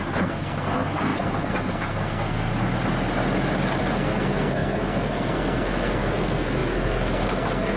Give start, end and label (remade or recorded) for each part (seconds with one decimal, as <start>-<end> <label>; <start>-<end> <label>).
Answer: 0.0-2.5 remade; 2.5-3.8 recorded; 3.8-7.8 remade

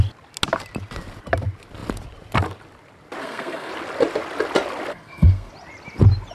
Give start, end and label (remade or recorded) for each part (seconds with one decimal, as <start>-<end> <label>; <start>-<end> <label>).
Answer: 0.0-3.2 recorded; 3.2-3.7 remade; 3.7-4.9 recorded; 4.9-5.5 remade; 5.5-6.3 recorded

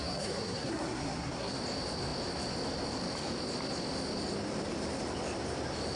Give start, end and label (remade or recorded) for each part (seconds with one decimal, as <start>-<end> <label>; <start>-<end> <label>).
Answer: 0.0-1.5 remade; 1.5-6.0 recorded

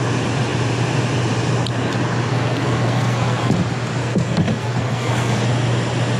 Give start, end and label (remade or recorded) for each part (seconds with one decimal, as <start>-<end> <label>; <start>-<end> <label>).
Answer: 0.0-2.3 recorded; 2.3-3.5 remade; 3.5-4.0 recorded; 4.0-5.4 remade; 5.4-6.2 recorded

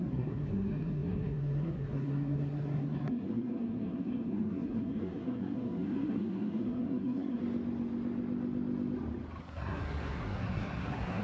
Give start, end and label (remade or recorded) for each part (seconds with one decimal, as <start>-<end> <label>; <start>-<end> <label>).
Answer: 0.0-7.4 remade; 7.4-9.4 recorded; 9.4-11.2 remade

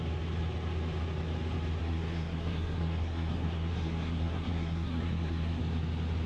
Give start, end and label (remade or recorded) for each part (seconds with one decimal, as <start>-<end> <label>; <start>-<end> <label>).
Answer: 0.0-1.8 recorded; 1.8-5.6 remade; 5.6-6.3 recorded